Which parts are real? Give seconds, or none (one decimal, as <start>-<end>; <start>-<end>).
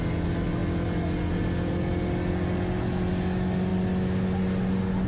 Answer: 0.0-5.1